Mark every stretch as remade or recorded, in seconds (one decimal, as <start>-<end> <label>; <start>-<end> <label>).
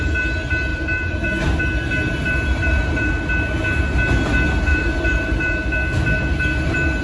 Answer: 0.0-0.7 recorded; 0.7-1.6 remade; 1.6-2.5 recorded; 2.5-3.1 remade; 3.1-4.7 recorded; 4.7-5.6 remade; 5.6-7.0 recorded